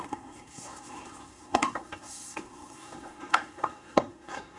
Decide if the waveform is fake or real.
fake